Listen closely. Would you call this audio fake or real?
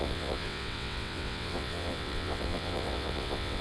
fake